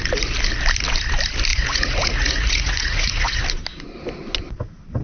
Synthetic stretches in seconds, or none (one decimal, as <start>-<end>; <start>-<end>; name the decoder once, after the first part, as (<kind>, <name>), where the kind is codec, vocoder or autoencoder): 1.5-3.4 (vocoder, Vocos)